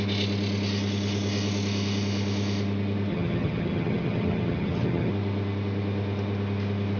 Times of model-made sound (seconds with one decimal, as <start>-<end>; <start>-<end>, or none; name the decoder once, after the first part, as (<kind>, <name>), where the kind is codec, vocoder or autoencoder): 3.1-5.1 (vocoder, HiFi-GAN)